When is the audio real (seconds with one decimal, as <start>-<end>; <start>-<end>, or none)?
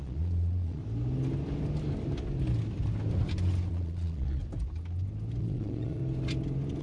0.8-3.7; 4.4-5.4; 6.0-6.8